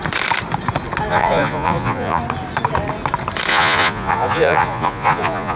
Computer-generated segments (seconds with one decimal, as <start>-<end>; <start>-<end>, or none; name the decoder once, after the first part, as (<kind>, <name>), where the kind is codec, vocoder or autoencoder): 1.1-2.2 (vocoder, Vocos); 3.5-5.6